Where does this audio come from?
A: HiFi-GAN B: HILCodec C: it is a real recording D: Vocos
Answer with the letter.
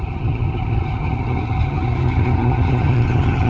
A